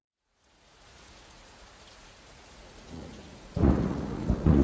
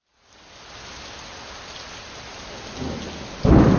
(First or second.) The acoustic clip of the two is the second